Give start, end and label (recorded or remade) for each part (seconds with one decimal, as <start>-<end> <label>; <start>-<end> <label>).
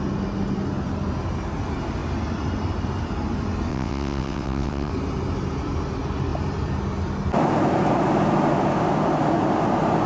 0.0-3.7 recorded; 3.7-4.9 remade; 4.9-10.1 recorded